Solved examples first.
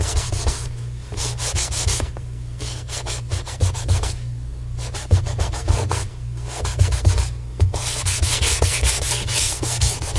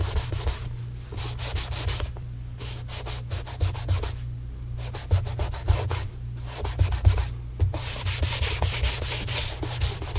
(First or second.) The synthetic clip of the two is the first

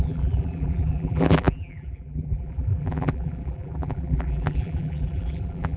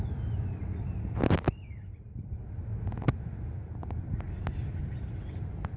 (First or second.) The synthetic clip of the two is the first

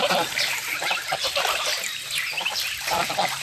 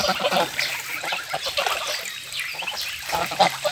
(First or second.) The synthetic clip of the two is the first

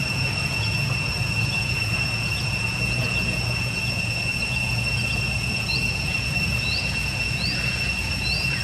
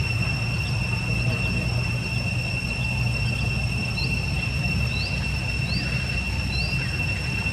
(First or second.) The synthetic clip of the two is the first